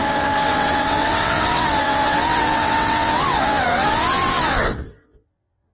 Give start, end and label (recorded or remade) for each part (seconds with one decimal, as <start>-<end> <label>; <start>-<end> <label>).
0.0-5.7 remade